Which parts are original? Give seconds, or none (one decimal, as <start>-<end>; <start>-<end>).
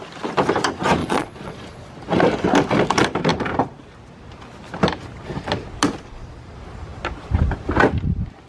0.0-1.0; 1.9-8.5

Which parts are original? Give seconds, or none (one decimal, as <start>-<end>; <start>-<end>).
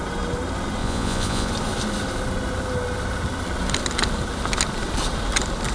0.0-0.8; 1.5-5.7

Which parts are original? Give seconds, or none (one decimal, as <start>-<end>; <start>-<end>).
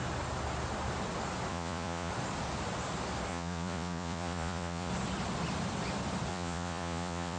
0.0-1.5; 2.1-3.3; 4.9-6.3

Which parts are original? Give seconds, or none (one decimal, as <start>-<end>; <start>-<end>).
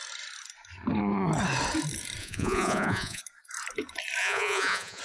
0.0-2.2; 3.2-4.2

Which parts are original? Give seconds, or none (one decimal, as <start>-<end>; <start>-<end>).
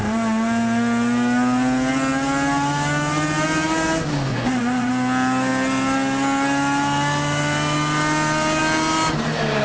0.0-4.3; 4.9-9.6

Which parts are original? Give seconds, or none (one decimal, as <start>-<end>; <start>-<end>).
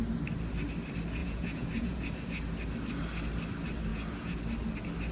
0.0-1.2; 2.4-3.9; 4.4-5.1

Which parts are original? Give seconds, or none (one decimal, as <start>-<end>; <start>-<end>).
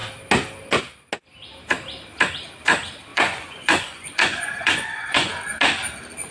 0.0-3.1; 5.3-6.3